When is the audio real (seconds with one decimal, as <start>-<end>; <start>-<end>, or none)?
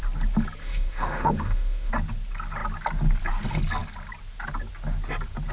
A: 0.0-0.6; 1.9-5.5